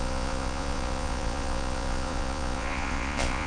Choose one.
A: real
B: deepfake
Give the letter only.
B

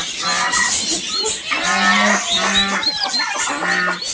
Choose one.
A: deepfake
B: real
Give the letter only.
B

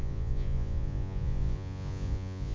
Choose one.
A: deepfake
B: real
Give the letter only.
A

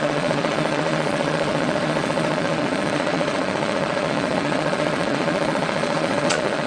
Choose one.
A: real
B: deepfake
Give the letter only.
B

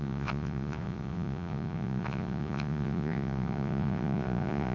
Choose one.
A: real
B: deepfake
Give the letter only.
B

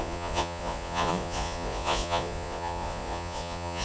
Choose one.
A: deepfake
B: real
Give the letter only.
A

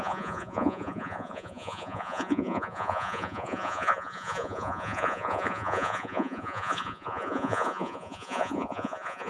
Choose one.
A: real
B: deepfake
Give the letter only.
B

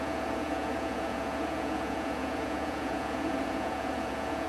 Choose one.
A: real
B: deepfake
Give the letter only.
B